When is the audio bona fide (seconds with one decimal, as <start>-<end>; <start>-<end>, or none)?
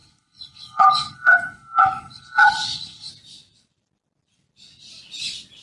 3.1-5.6